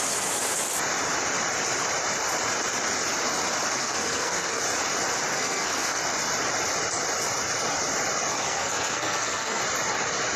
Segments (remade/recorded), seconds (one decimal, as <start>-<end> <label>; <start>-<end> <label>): 0.0-3.7 recorded; 3.7-4.6 remade; 4.6-5.3 recorded; 5.3-6.0 remade; 6.0-8.3 recorded; 8.3-9.6 remade; 9.6-10.4 recorded